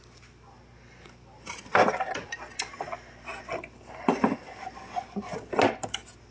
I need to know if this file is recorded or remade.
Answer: recorded